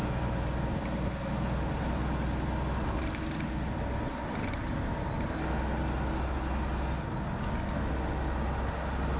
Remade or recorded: recorded